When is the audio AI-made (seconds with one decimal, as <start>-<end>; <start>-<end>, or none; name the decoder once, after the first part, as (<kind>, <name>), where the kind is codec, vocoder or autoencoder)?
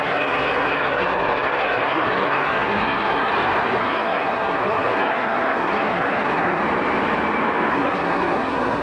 0.0-3.3 (codec, SNAC); 3.8-6.6; 7.7-8.8